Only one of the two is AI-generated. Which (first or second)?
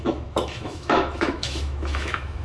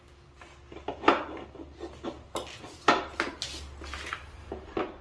first